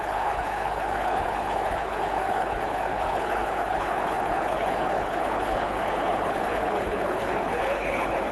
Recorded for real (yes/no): no